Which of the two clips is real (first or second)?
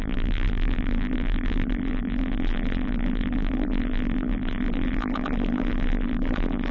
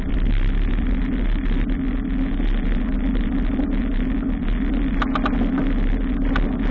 second